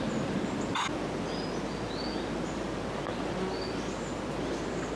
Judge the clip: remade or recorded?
recorded